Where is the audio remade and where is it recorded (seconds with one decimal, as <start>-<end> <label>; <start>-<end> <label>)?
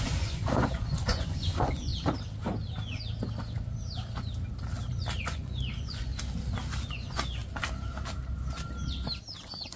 0.0-1.9 remade; 1.9-5.2 recorded; 5.2-6.1 remade; 6.1-6.9 recorded; 6.9-7.4 remade; 7.4-9.3 recorded; 9.3-9.8 remade